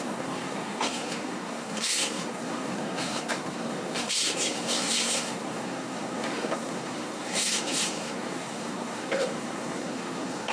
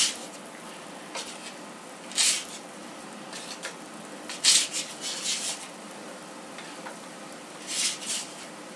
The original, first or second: second